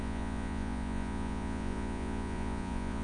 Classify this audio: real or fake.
fake